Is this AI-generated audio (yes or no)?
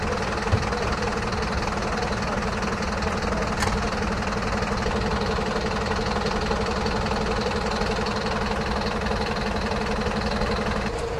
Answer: no